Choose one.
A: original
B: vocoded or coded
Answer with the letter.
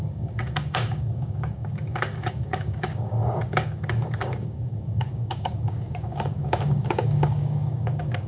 B